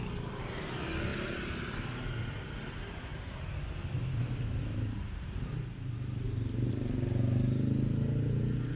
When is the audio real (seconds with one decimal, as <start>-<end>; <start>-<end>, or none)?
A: 0.0-1.1; 2.1-3.1; 6.7-8.8